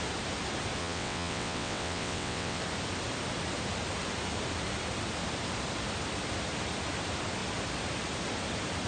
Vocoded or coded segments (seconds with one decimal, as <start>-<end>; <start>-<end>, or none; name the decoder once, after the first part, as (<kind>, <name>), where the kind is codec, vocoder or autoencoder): 0.8-2.6 (vocoder, WaveNeXt)